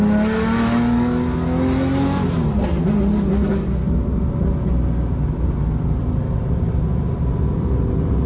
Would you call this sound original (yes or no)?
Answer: yes